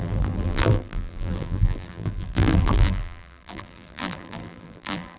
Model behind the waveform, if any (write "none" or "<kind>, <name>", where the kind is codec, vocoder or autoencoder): vocoder, BigVGAN v2